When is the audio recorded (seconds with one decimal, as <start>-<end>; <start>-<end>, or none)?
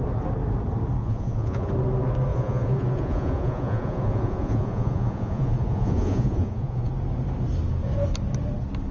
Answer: 0.0-1.0; 1.7-2.3; 6.9-8.9